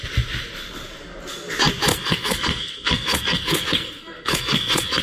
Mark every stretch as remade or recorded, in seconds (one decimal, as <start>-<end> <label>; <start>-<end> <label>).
0.0-1.9 recorded; 1.9-5.0 remade